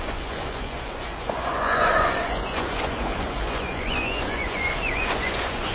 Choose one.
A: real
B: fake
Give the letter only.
B